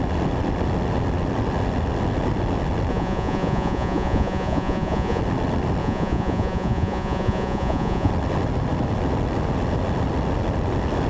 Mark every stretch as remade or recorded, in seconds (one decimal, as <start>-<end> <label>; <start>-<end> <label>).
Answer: 0.0-2.9 recorded; 2.9-5.2 remade; 5.2-5.8 recorded; 5.8-8.1 remade; 8.1-11.1 recorded